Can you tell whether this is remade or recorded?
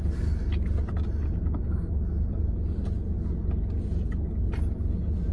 recorded